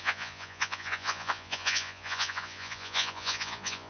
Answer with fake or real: fake